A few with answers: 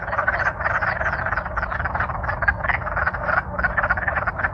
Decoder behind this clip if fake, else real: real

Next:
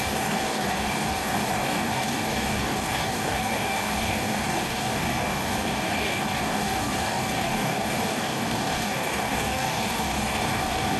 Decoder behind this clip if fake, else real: fake, codec, DAC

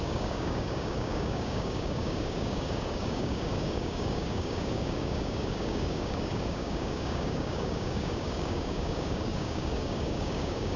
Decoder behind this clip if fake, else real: fake, codec, DAC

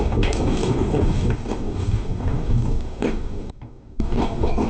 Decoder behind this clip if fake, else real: fake, codec, DAC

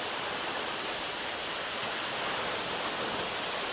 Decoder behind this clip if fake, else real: real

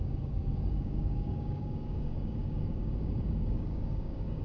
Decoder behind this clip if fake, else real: fake, codec, DAC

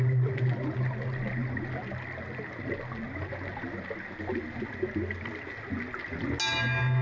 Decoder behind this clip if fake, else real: real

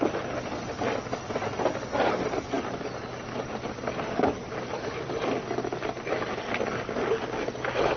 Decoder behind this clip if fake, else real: real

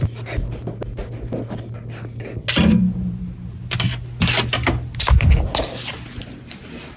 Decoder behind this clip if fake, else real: real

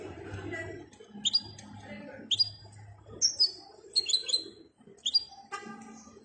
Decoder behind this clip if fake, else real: real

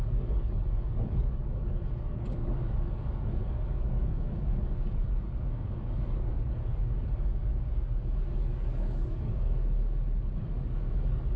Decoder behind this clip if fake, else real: fake, codec, DAC